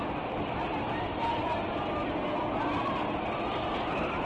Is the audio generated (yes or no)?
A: no